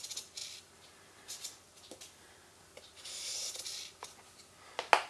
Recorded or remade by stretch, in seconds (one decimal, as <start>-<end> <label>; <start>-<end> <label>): 0.0-5.1 recorded